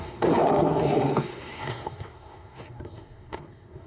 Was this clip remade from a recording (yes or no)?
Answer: yes